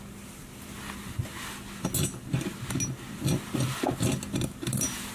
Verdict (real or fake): real